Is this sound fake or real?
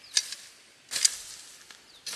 real